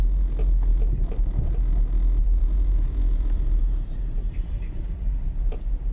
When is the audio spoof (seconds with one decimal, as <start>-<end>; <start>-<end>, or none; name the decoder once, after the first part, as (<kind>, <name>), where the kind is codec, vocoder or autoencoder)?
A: 2.4-4.8 (vocoder, BigVGAN v2)